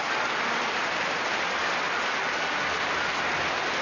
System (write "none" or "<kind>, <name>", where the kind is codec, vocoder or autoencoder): none